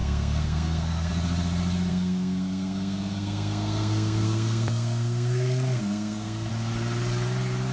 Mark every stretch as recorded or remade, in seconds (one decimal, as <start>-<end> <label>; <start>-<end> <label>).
0.0-1.1 remade; 1.1-1.9 recorded; 1.9-6.5 remade; 6.5-7.7 recorded